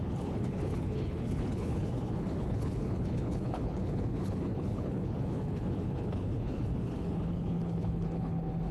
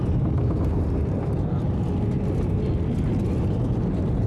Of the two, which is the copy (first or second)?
first